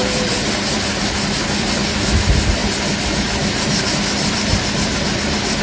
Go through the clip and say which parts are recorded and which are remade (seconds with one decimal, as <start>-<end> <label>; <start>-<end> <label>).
0.0-5.6 recorded

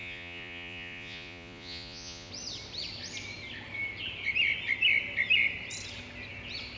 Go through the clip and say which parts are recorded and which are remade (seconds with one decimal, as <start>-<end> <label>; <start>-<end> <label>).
0.0-2.3 remade; 2.3-6.8 recorded

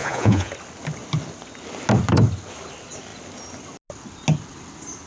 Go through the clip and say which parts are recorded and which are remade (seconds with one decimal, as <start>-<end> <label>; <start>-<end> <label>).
0.0-0.5 remade; 0.5-5.1 recorded

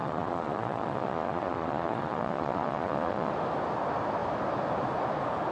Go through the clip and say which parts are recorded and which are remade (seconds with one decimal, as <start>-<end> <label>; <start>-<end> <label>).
0.0-3.3 remade; 3.3-5.5 recorded

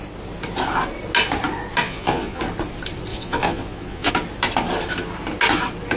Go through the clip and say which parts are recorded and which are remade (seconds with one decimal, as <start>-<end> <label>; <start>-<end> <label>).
0.0-1.8 recorded; 1.8-2.4 remade; 2.4-3.1 recorded; 3.1-4.1 remade; 4.1-6.0 recorded